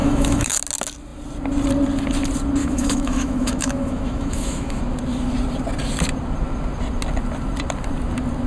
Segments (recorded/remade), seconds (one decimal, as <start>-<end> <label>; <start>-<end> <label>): 0.0-0.6 remade; 0.6-2.6 recorded; 2.6-4.8 remade; 4.8-8.5 recorded